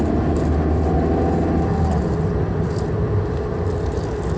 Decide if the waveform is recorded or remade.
recorded